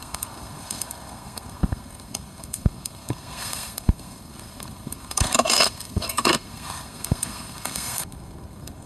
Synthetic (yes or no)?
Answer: yes